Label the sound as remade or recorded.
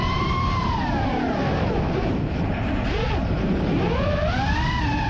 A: remade